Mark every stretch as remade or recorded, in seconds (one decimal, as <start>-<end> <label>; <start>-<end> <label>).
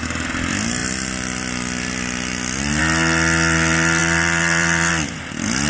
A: 0.0-4.0 recorded; 4.0-4.9 remade; 4.9-5.7 recorded